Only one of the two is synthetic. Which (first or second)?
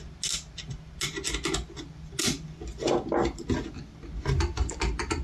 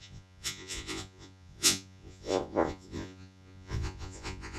second